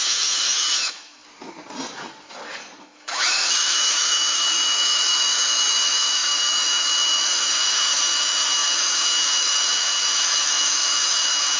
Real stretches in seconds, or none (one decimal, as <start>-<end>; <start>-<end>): 1.2-2.8